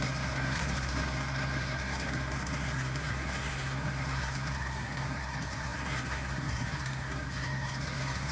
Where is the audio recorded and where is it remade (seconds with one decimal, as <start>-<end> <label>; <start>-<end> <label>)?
0.0-8.3 remade